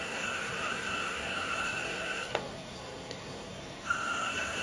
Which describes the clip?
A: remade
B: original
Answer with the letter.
A